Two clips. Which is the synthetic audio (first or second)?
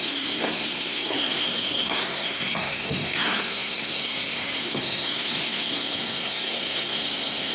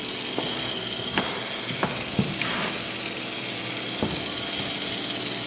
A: first